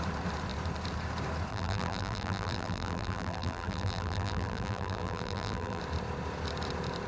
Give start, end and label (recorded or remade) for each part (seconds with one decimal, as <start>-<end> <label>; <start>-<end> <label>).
0.0-1.5 recorded; 1.5-5.8 remade; 5.8-7.1 recorded